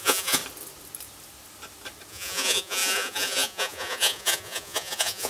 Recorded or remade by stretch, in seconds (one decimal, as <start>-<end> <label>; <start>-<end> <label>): 0.0-0.4 remade; 0.4-2.1 recorded; 2.1-5.3 remade